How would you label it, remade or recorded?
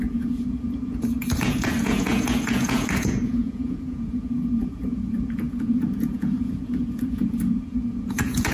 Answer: remade